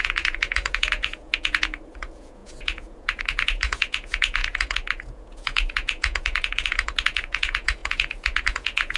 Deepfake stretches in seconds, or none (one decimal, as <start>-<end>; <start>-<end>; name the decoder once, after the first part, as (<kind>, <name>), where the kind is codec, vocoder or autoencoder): 0.0-9.0 (vocoder, Vocos)